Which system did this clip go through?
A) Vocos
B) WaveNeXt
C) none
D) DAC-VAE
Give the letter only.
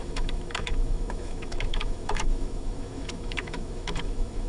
D